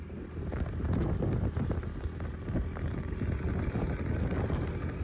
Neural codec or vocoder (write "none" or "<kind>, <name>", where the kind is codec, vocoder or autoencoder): none